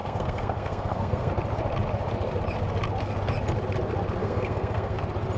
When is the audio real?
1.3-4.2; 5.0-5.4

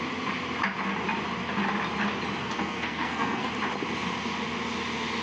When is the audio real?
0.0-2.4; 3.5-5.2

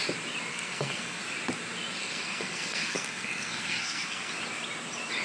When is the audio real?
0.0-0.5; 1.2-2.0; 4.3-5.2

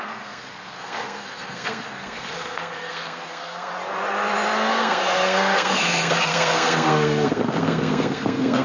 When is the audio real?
3.7-4.7

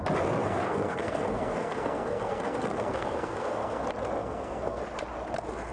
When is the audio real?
0.0-0.4; 3.8-4.2; 4.8-5.7

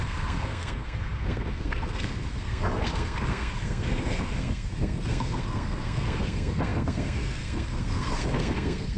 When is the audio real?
none